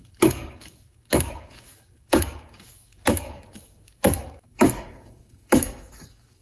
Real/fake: fake